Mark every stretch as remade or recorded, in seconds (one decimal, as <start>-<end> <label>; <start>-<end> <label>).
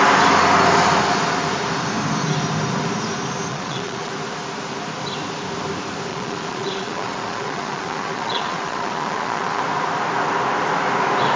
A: 0.0-3.5 recorded; 3.5-4.1 remade; 4.1-6.1 recorded; 6.1-9.6 remade; 9.6-11.4 recorded